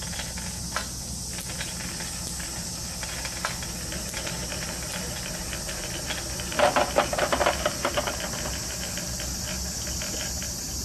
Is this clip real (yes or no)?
yes